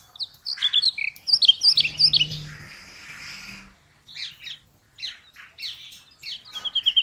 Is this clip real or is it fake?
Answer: real